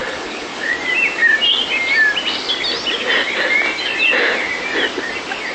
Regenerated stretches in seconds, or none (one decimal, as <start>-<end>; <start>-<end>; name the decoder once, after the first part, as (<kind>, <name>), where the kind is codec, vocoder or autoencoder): 0.0-0.7 (codec, HILCodec)